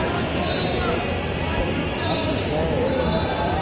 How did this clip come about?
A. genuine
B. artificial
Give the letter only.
A